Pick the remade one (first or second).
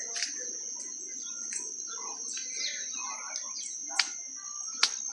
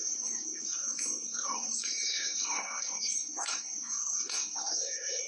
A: second